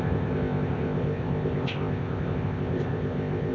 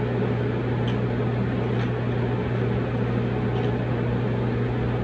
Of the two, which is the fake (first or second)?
first